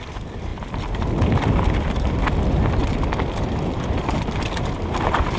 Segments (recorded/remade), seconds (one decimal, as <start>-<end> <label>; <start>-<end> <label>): 0.0-5.4 recorded